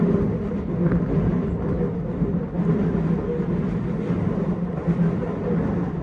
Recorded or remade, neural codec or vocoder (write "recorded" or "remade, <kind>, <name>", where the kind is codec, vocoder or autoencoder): recorded